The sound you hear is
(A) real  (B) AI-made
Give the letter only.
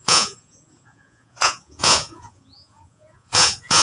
B